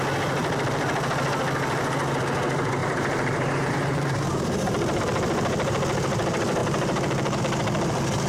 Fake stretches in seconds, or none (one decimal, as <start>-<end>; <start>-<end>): 2.8-5.0; 6.6-7.4